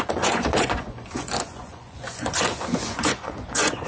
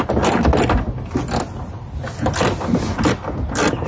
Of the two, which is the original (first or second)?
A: second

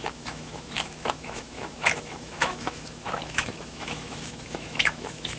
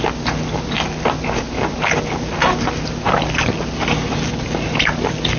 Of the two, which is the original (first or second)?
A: second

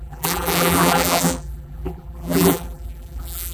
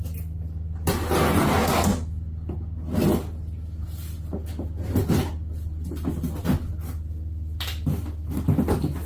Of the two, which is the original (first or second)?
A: second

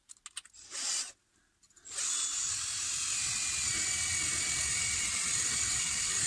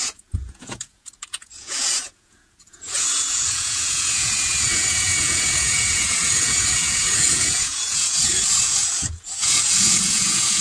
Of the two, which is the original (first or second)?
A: first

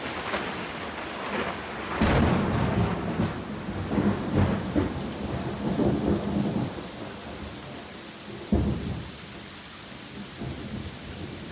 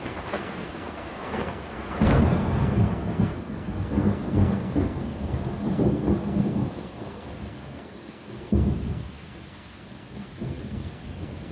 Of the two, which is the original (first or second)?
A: first